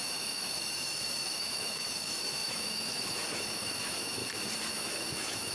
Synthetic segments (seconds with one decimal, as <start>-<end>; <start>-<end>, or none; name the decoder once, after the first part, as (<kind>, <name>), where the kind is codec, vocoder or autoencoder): 0.0-4.2 (autoencoder, DAC-VAE); 4.7-5.5